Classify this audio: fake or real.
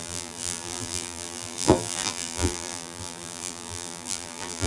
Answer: fake